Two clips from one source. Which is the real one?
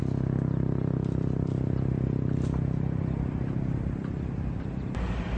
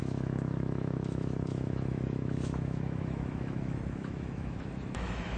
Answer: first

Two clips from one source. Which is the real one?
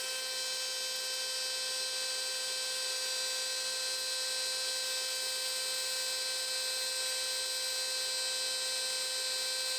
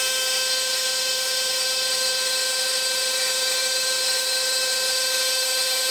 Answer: first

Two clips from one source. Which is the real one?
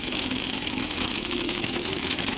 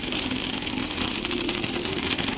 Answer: second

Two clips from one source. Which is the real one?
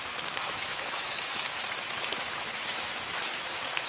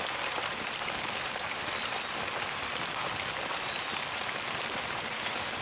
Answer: second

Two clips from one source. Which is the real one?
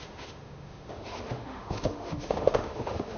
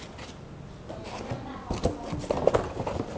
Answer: second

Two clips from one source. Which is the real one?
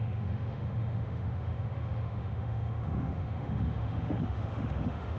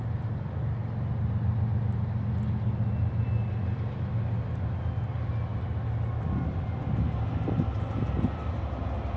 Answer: second